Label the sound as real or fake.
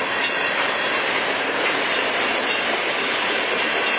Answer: real